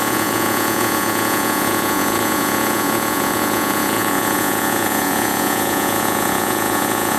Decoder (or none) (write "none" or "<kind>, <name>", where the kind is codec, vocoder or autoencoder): vocoder, Vocos